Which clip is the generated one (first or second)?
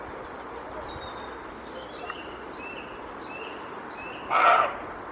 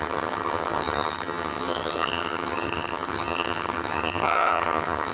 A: second